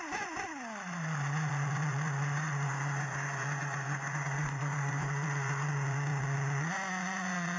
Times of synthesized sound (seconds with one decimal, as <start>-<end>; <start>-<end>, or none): 0.0-6.1; 6.7-7.6